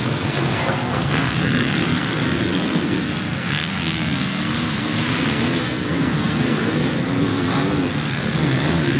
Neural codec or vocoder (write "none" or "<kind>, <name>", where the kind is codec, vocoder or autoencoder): codec, SNAC